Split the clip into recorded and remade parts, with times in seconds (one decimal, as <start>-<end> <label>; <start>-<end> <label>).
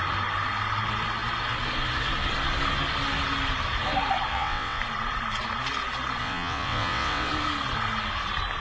0.0-4.3 recorded; 4.3-4.8 remade; 4.8-6.2 recorded; 6.2-7.3 remade; 7.3-8.6 recorded